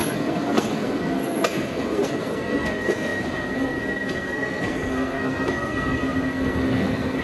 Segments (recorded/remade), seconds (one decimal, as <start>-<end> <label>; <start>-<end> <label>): 0.0-7.2 remade